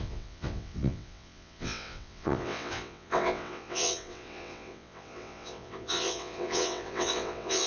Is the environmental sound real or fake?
fake